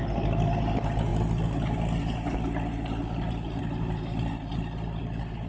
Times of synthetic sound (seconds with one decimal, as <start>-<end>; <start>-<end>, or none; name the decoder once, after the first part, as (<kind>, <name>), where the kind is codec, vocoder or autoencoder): none